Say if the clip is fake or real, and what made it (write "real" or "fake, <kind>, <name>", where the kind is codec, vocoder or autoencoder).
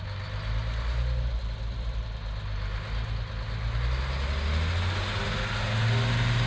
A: real